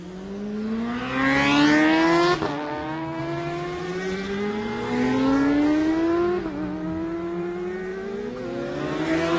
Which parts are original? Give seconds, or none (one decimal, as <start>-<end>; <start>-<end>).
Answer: 0.0-2.5; 3.2-9.4